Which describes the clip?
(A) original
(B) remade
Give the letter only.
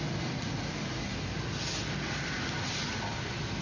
A